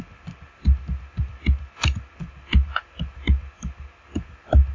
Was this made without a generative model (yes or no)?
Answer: yes